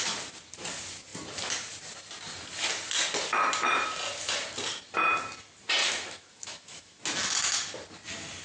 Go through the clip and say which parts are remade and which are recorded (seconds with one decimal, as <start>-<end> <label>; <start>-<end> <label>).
0.0-5.8 recorded; 5.8-7.0 remade; 7.0-8.4 recorded